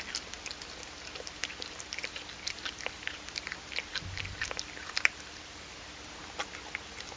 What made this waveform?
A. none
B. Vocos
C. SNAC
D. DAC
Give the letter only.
A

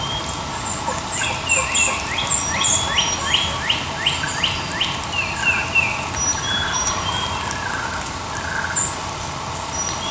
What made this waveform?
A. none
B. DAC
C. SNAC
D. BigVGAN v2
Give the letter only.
A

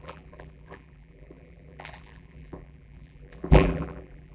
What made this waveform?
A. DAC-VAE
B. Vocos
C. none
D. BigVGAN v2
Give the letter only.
D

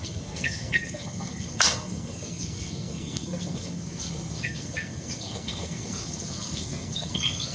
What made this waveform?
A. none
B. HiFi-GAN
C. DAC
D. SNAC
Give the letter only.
D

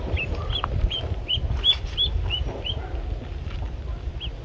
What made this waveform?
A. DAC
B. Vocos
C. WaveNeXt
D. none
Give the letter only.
D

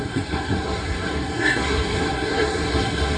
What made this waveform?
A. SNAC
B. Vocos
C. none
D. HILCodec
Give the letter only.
A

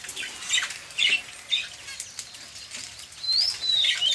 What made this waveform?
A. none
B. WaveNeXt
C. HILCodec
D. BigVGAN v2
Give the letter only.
A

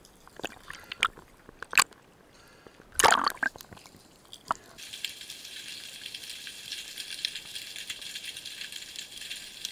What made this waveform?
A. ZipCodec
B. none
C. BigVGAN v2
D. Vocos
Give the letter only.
B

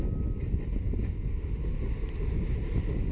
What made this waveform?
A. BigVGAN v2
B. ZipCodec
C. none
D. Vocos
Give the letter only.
C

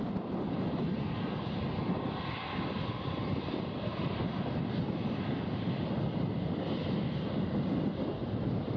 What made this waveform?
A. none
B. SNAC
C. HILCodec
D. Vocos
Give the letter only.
A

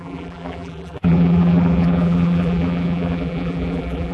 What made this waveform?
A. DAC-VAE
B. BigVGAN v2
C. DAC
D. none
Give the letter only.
B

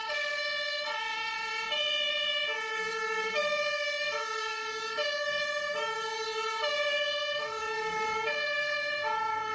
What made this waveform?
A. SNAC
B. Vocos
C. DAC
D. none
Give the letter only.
C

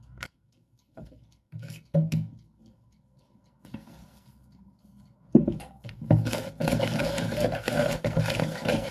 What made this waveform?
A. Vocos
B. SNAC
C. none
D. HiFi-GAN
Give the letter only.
B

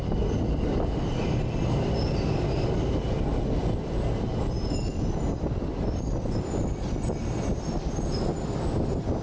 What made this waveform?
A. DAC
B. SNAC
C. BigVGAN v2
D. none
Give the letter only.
D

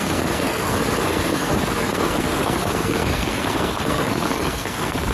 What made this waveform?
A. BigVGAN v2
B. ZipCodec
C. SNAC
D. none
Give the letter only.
C